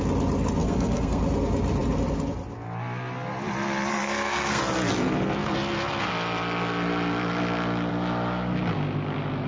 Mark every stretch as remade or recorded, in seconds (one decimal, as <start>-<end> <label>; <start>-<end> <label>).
0.0-0.6 recorded; 0.6-1.2 remade; 1.2-3.9 recorded; 3.9-4.6 remade; 4.6-9.5 recorded